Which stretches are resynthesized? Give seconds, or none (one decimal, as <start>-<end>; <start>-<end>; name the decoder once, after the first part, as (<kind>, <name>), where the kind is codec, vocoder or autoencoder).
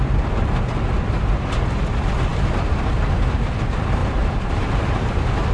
2.3-3.2 (vocoder, BigVGAN v2); 4.0-5.5